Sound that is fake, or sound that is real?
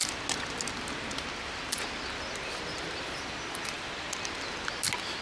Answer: real